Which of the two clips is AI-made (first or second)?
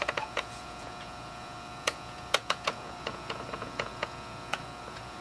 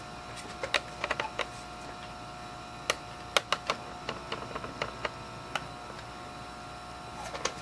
first